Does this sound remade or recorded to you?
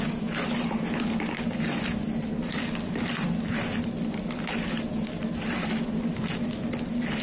recorded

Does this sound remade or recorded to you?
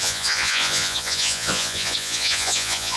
remade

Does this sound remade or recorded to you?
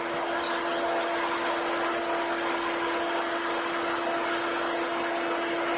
recorded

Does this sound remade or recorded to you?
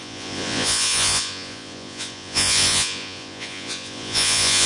remade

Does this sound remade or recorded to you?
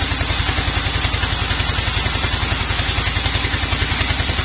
recorded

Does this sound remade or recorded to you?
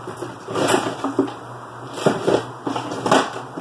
recorded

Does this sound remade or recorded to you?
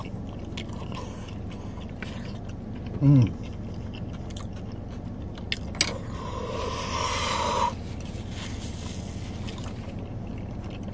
recorded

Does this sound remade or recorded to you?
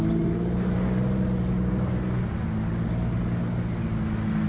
recorded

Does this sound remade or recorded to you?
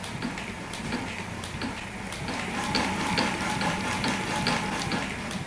recorded